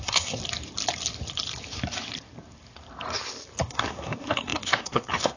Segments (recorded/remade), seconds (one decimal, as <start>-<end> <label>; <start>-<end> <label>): 0.0-0.4 remade; 0.4-3.6 recorded; 3.6-5.4 remade